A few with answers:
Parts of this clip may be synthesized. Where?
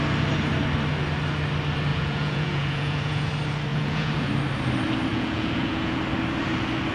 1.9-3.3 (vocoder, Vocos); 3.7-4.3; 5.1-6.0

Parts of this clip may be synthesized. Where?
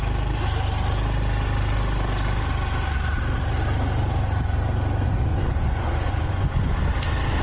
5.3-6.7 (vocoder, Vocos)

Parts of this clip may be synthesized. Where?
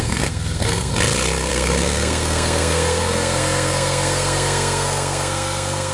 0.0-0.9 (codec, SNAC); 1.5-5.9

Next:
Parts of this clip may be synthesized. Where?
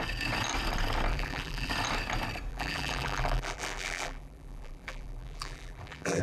1.1-1.7 (vocoder, BigVGAN v2); 2.5-6.2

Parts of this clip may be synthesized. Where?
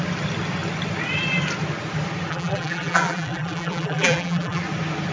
2.3-4.6 (vocoder, BigVGAN v2)